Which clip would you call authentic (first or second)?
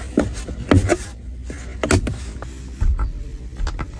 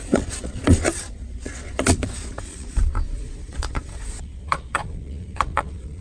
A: first